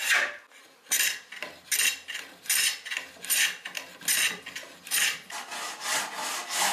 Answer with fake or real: real